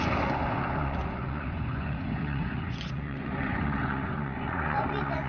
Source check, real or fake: fake